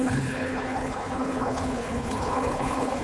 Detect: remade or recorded remade